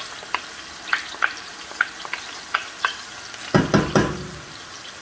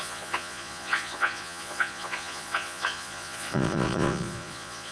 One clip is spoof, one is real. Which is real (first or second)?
first